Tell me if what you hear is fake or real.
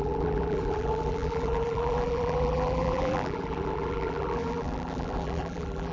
fake